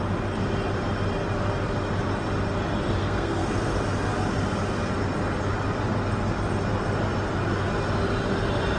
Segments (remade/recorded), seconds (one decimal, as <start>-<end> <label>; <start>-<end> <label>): 0.0-3.0 recorded; 3.0-3.7 remade; 3.7-8.8 recorded